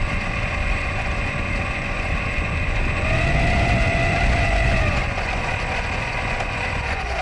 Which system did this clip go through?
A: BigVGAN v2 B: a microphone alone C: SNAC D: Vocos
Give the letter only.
D